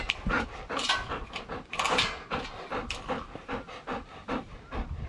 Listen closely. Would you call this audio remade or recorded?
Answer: recorded